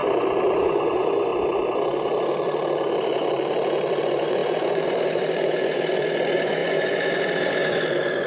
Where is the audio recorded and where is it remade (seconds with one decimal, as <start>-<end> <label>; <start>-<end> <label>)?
0.0-0.6 recorded; 0.6-1.3 remade; 1.3-4.0 recorded; 4.0-8.3 remade